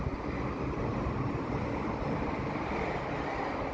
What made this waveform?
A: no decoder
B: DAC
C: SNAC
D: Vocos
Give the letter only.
A